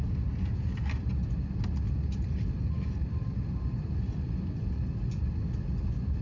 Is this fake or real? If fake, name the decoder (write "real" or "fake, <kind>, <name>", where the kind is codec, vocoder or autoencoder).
real